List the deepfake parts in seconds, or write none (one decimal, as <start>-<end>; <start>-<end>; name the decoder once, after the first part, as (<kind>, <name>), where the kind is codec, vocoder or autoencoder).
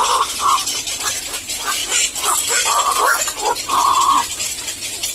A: none